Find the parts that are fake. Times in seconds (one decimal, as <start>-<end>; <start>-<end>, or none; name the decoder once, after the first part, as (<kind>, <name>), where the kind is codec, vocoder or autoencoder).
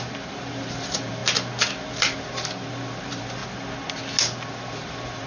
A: 0.0-1.2 (vocoder, BigVGAN v2); 1.7-3.4; 4.2-5.3